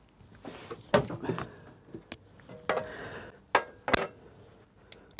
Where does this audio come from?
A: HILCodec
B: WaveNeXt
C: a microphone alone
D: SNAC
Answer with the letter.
C